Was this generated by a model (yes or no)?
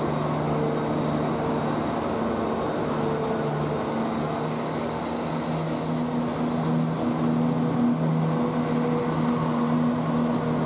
no